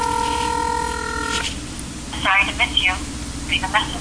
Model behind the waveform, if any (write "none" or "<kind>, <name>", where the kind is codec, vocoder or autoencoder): none